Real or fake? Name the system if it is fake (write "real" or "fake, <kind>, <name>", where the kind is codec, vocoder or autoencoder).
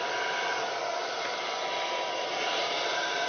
real